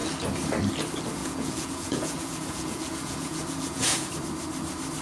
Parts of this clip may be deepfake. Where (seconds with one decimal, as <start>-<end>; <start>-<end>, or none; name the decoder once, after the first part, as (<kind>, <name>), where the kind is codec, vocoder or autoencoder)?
1.2-4.1 (vocoder, Vocos)